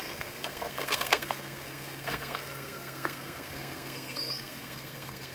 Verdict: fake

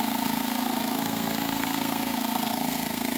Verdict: fake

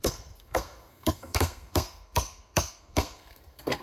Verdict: fake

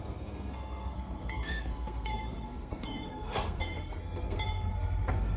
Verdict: fake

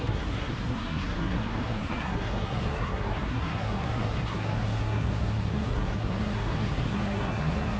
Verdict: fake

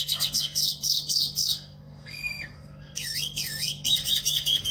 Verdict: fake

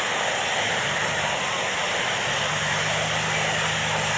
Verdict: real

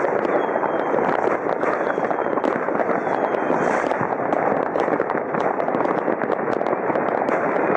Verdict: real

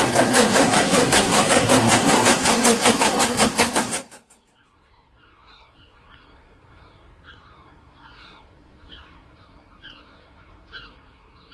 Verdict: fake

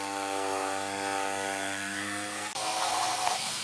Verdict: fake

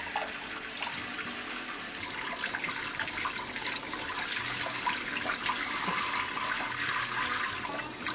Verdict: real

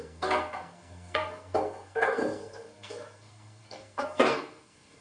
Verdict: fake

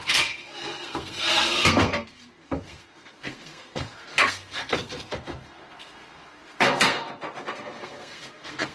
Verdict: fake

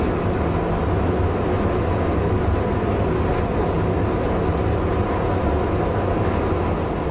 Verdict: real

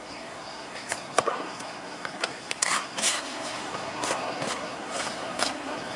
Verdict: fake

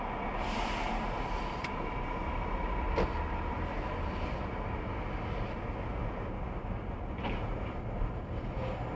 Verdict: real